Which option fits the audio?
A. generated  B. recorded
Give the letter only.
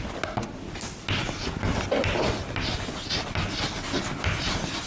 B